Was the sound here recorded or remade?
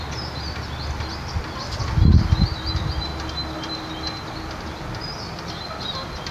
recorded